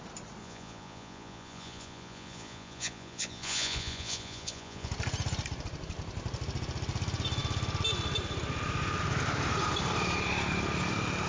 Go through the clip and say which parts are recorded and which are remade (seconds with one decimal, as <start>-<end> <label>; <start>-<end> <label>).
0.0-0.4 recorded; 0.4-4.9 remade; 4.9-11.3 recorded